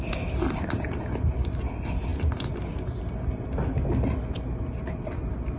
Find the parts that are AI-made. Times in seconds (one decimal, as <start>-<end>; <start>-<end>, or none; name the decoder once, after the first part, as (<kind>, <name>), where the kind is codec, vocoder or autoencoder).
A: none